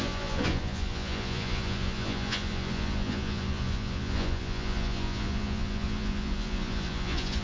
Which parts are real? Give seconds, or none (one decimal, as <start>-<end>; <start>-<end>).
none